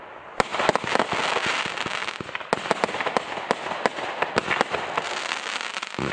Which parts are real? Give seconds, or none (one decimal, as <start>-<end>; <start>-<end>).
0.0-6.1